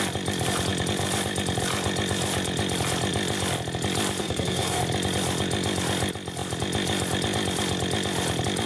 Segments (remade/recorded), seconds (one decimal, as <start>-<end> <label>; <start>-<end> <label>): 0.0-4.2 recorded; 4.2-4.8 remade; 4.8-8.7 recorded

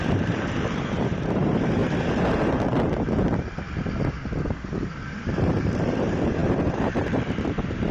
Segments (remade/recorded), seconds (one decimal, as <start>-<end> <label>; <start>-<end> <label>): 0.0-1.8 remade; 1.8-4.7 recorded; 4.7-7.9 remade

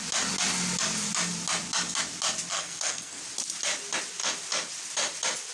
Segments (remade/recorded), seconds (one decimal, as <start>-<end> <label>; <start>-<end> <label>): 0.0-2.5 recorded; 2.5-3.2 remade; 3.2-5.5 recorded